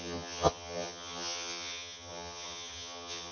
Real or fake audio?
fake